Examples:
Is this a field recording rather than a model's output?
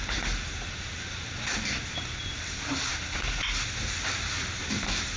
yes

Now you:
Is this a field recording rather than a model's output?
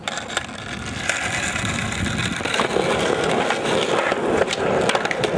yes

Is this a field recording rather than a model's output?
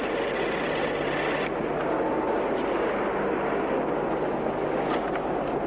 yes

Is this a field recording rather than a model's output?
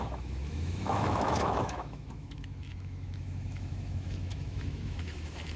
no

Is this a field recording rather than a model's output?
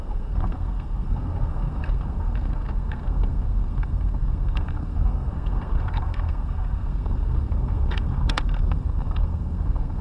no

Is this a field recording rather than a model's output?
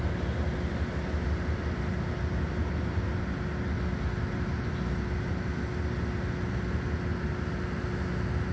yes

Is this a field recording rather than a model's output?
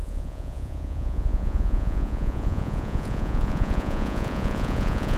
no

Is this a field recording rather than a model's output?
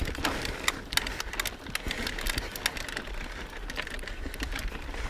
yes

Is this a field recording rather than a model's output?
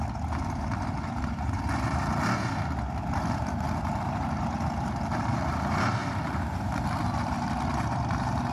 no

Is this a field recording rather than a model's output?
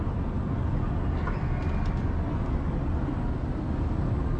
yes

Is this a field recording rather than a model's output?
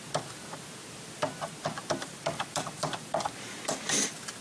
no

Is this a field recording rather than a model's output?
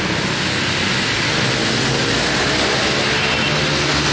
yes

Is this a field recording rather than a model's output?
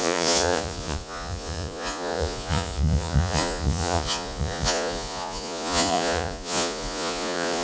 no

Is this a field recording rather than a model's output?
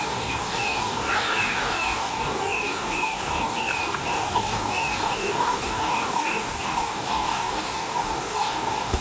no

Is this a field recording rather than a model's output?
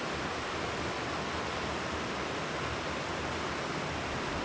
yes